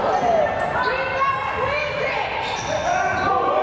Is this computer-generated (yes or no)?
no